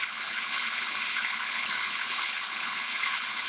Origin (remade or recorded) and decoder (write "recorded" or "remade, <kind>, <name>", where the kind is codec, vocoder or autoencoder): remade, codec, HILCodec